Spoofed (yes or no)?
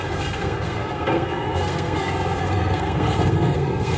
yes